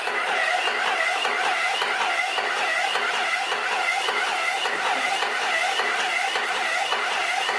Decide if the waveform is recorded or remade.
recorded